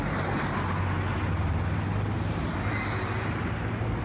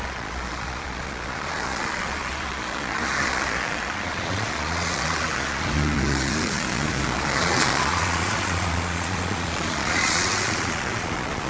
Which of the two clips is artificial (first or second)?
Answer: second